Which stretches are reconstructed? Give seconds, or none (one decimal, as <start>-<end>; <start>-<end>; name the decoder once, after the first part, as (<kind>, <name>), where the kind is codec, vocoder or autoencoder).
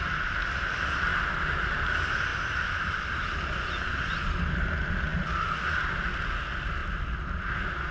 1.1-1.9 (vocoder, BigVGAN v2); 2.3-3.0